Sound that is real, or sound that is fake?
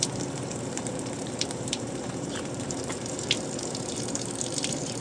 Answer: fake